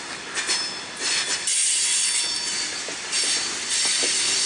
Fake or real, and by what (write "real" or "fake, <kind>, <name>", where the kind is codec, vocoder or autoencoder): real